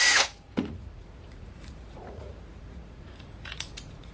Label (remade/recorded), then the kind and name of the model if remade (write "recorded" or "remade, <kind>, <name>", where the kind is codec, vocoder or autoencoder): remade, vocoder, Vocos